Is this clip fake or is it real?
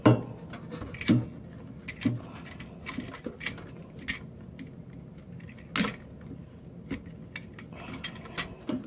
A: real